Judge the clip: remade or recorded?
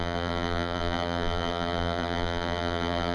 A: remade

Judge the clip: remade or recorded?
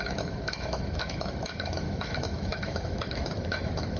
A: remade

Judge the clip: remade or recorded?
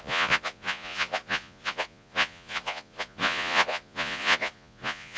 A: remade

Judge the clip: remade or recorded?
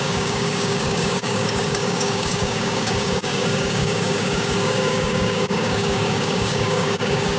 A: remade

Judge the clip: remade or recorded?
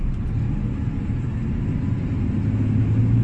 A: recorded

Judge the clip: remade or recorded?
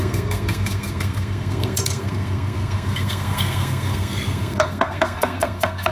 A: remade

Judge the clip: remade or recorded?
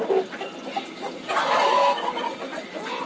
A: recorded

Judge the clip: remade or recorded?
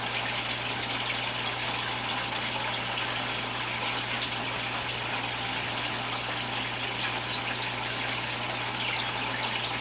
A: recorded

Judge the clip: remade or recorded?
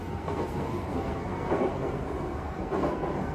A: remade